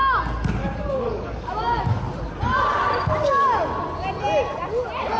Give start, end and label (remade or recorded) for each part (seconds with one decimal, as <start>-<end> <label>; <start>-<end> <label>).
0.0-0.6 recorded; 0.6-2.0 remade; 2.0-5.2 recorded